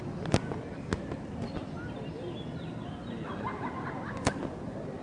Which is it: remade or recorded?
recorded